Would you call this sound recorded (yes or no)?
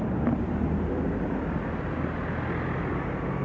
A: yes